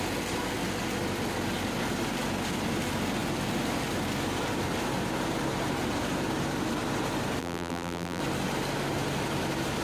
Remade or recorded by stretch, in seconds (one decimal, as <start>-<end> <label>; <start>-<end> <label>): 0.0-7.4 recorded; 7.4-8.2 remade; 8.2-9.8 recorded